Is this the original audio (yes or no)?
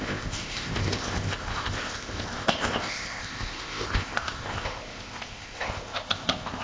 no